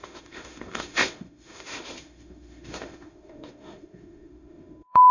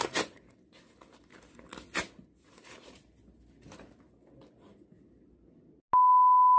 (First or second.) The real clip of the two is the second